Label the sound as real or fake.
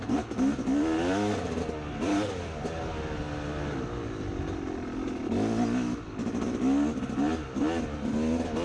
real